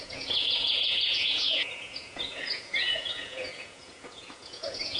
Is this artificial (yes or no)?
yes